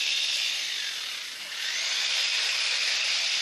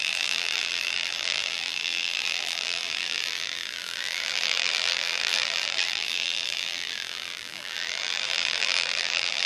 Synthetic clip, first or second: second